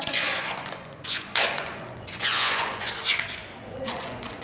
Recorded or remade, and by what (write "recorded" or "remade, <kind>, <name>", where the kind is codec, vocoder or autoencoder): remade, vocoder, Vocos